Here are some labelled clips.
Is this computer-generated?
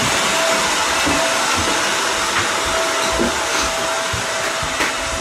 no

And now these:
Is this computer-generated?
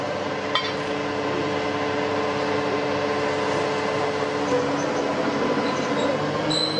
no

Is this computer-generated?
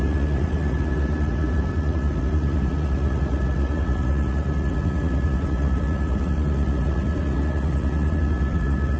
yes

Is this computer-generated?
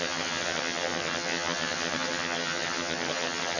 yes